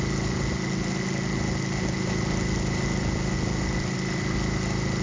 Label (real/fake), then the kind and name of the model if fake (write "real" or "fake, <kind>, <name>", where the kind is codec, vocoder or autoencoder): real